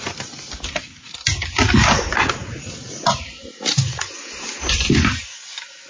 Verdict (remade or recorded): recorded